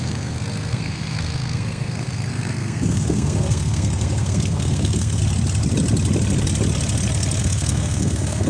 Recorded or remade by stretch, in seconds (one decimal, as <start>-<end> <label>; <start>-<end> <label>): 0.0-5.2 remade; 5.2-7.4 recorded; 7.4-8.5 remade